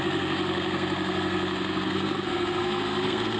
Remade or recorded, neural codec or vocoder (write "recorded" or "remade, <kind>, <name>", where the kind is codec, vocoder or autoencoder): remade, codec, SNAC